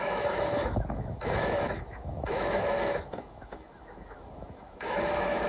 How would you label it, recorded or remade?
remade